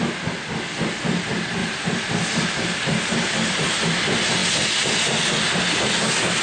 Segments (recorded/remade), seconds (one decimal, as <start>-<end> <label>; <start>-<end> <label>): 0.0-1.6 recorded; 1.6-3.7 remade; 3.7-6.4 recorded